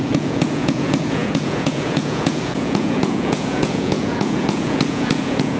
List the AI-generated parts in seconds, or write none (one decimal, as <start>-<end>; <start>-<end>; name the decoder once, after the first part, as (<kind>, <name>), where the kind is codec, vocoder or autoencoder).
0.0-5.6 (vocoder, Vocos)